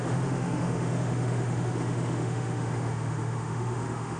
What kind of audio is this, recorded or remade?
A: remade